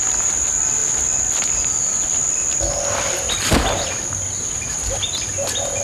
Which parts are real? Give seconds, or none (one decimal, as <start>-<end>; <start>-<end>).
0.0-5.8